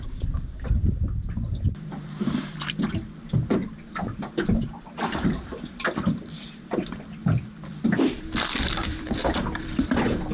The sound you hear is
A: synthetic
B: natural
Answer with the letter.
A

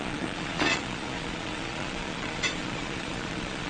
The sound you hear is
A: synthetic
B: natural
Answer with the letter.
A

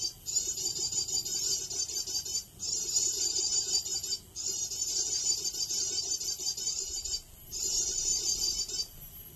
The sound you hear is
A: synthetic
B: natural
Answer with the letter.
B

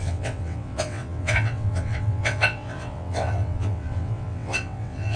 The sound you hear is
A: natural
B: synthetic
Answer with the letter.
B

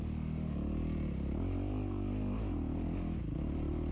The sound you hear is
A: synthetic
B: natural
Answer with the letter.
B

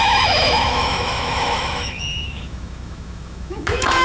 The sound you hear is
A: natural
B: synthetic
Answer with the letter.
B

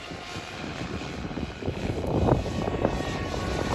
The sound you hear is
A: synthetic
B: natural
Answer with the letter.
A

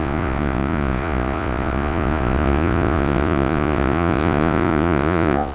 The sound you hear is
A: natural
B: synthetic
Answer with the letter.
B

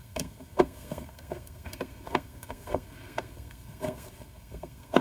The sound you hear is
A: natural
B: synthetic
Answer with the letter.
B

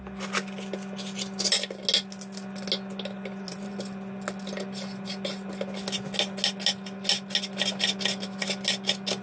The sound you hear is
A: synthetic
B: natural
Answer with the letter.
B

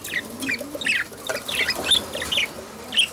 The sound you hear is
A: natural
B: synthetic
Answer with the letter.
A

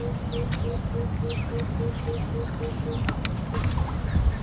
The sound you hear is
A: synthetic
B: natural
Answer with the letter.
B